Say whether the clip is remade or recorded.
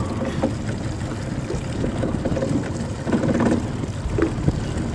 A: recorded